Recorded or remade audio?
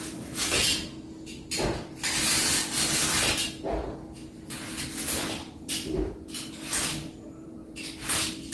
recorded